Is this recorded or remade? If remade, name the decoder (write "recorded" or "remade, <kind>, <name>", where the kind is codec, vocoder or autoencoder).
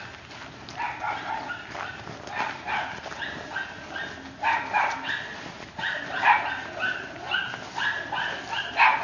recorded